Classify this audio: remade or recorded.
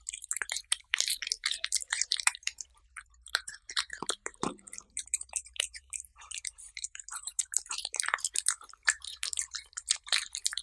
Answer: remade